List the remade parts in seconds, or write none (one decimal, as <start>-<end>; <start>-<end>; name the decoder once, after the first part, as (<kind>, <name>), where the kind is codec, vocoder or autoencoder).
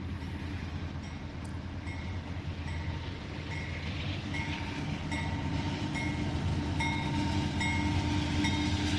none